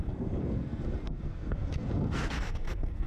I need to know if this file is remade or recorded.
remade